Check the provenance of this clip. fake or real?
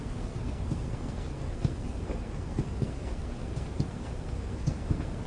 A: fake